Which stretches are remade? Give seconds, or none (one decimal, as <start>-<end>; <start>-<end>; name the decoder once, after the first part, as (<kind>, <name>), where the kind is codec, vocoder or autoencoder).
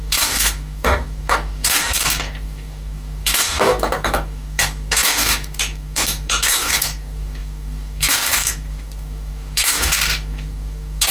0.0-11.1 (codec, DAC)